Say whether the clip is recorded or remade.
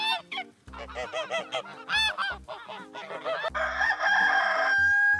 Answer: recorded